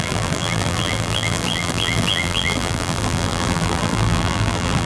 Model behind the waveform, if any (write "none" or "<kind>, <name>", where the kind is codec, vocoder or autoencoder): vocoder, BigVGAN v2